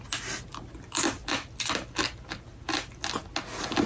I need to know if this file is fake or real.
real